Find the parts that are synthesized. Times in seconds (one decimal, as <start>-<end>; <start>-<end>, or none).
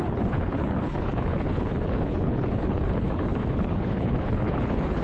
0.0-5.0